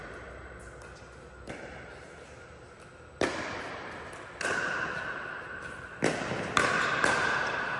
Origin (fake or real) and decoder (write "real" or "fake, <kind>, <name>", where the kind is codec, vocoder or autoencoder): real